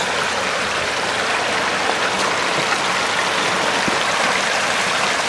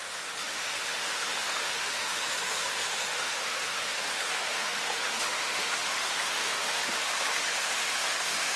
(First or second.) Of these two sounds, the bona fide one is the first